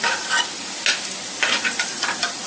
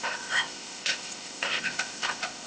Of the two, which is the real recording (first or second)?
first